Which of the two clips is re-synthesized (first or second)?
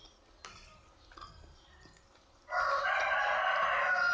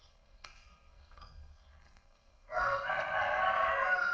second